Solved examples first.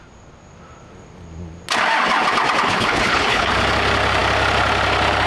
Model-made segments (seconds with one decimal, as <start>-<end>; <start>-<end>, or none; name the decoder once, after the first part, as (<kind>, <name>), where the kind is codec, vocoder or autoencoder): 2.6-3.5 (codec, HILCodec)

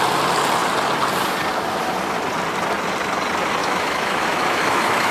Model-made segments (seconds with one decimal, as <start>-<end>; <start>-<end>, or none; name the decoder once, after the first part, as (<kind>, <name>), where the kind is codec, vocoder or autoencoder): 3.6-5.1 (autoencoder, DAC-VAE)

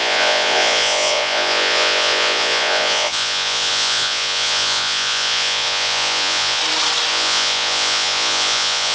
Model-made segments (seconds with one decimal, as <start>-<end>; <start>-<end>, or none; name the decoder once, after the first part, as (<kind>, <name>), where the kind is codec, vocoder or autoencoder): 0.0-6.6 (vocoder, Vocos); 7.1-8.9